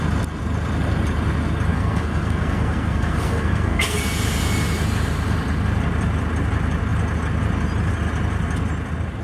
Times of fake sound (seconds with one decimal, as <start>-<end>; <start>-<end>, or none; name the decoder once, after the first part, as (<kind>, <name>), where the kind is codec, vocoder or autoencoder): 1.7-4.0 (codec, SNAC)